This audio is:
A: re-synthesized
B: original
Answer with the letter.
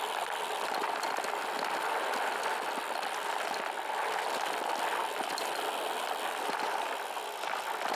B